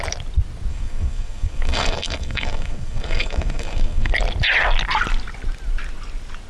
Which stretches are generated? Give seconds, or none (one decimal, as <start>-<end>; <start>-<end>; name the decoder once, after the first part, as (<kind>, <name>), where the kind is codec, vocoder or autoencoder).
0.7-4.1 (codec, SNAC)